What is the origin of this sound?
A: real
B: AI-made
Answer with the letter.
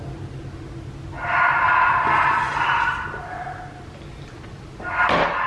A